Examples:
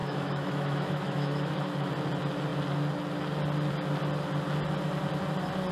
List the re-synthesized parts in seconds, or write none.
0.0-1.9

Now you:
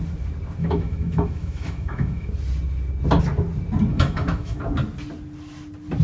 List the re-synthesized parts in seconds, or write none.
0.6-2.3; 3.9-4.6

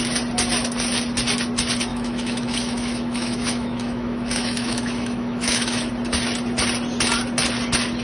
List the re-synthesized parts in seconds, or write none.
1.9-5.9

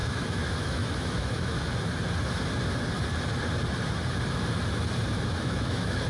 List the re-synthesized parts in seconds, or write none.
0.0-1.7; 5.4-6.1

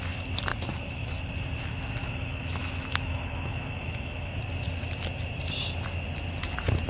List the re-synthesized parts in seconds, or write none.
0.5-1.2; 2.0-4.4

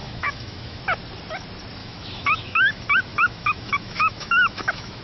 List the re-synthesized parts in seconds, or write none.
0.0-0.8; 1.8-5.0

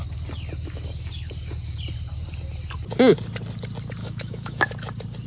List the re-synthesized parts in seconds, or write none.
4.0-4.7